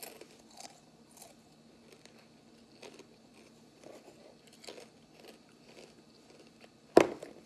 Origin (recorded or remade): recorded